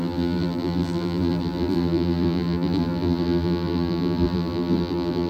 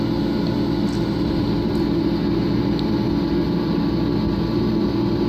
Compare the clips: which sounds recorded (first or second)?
second